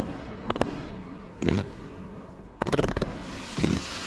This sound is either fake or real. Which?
fake